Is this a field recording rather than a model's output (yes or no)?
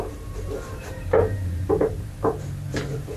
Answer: no